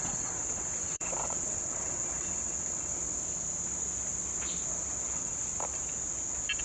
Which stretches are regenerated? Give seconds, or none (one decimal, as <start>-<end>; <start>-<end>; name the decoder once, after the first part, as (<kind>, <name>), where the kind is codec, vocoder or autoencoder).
0.0-2.9 (vocoder, WaveNeXt); 5.0-5.5